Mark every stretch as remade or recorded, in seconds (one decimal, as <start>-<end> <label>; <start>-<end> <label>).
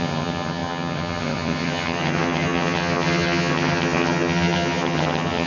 0.0-5.5 remade